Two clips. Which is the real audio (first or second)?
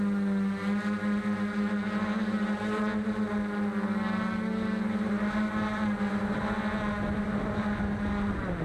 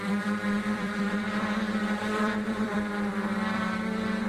first